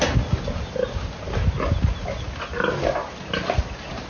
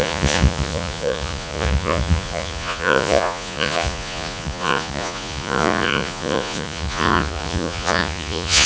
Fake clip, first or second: second